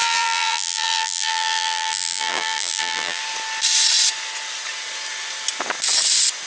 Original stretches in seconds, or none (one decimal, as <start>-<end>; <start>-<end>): 3.2-6.5